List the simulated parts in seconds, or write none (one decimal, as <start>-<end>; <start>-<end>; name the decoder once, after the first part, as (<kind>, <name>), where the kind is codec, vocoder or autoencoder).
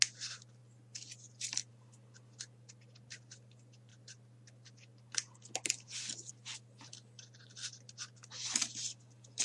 none